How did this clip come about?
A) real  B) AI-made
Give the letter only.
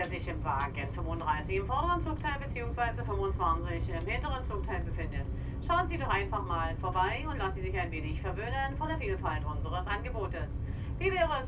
A